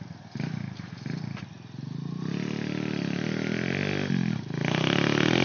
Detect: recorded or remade recorded